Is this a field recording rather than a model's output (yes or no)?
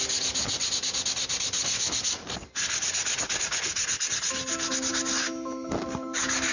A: yes